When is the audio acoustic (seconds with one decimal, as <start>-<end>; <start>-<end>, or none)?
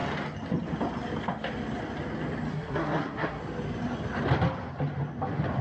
0.0-2.5; 3.4-5.6